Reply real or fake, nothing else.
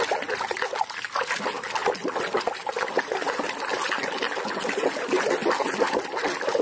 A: real